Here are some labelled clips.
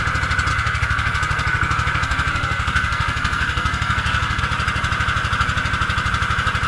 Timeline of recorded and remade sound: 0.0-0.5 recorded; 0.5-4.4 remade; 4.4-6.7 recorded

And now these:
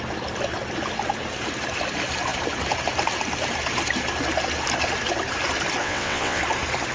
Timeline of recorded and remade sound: 0.0-5.8 recorded; 5.8-6.4 remade; 6.4-6.9 recorded

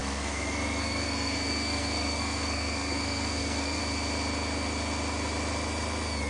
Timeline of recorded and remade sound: 0.0-3.8 remade; 3.8-6.3 recorded

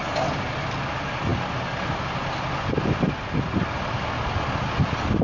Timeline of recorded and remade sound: 0.0-5.2 recorded